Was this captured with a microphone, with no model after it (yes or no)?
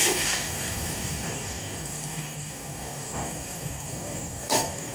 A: no